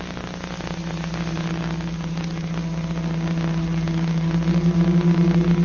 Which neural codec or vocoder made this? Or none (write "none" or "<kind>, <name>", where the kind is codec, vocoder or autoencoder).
none